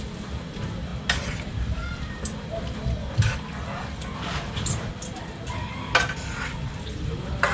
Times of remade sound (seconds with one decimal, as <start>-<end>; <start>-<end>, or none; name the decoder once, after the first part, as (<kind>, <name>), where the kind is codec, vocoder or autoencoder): none